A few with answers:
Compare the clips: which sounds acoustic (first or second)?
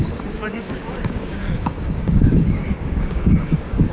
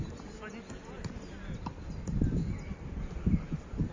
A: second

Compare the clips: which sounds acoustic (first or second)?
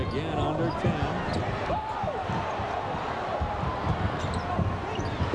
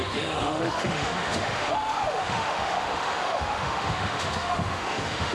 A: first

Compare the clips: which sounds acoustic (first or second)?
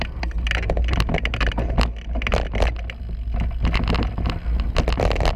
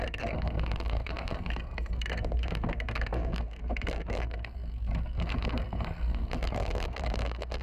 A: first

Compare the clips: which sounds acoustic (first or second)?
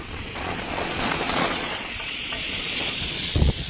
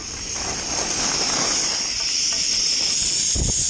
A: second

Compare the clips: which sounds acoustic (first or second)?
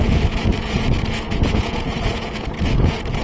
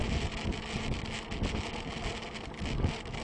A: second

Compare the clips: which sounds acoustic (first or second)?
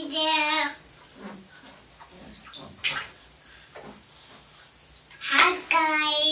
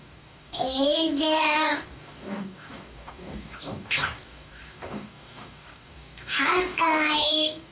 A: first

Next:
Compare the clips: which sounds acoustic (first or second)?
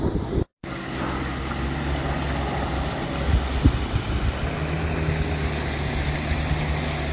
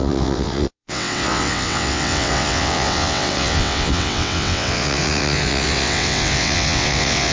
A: first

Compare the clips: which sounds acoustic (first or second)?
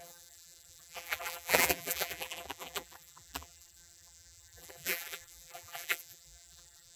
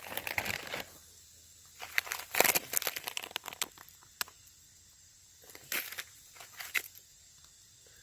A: second